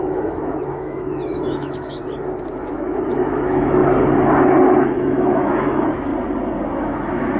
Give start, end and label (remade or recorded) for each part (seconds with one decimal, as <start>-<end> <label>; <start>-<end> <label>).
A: 0.0-2.0 remade; 2.0-2.7 recorded; 2.7-3.8 remade; 3.8-4.8 recorded; 4.8-6.1 remade; 6.1-7.4 recorded